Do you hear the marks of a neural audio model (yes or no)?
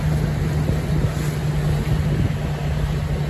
no